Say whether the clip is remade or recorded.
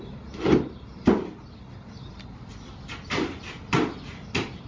recorded